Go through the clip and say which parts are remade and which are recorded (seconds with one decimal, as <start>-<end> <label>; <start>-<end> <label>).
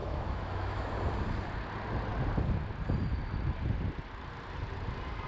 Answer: 0.0-0.9 remade; 0.9-5.3 recorded